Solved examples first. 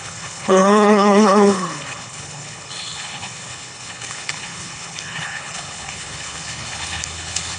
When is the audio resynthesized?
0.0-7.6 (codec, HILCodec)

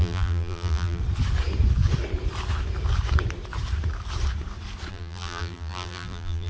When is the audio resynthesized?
0.0-1.0 (vocoder, BigVGAN v2); 4.9-6.5

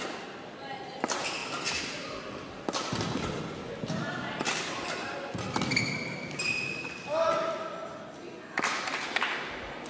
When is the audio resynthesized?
none

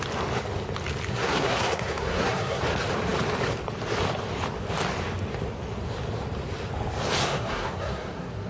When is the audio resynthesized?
1.1-2.6 (codec, SNAC); 7.2-8.5

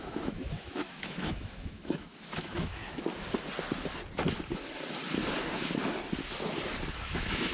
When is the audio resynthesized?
0.0-2.8 (autoencoder, DAC-VAE); 6.9-7.5

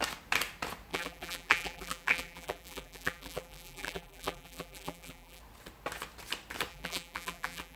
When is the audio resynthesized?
0.9-5.4 (vocoder, BigVGAN v2); 6.7-7.8

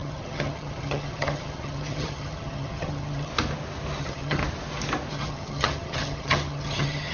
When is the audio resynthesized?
0.0-3.3 (vocoder, HiFi-GAN); 4.0-4.4; 5.1-7.1

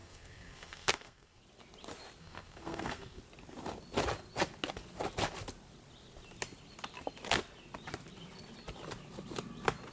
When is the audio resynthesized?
0.0-1.4 (codec, SNAC); 2.2-3.2